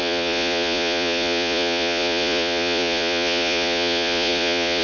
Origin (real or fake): fake